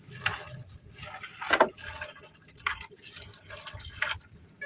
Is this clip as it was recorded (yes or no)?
yes